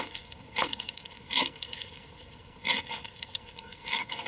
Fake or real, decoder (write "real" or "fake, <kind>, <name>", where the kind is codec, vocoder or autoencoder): fake, codec, SNAC